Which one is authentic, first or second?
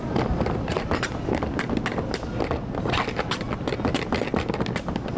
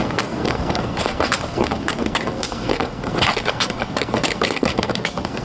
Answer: first